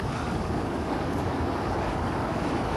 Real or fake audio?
fake